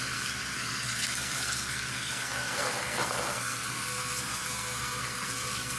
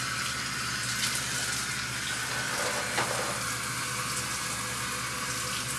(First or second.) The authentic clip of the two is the second